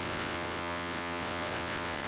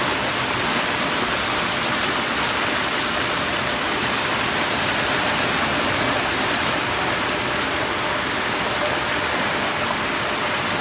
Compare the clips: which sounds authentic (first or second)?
second